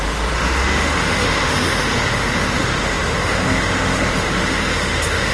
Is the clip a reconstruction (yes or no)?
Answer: yes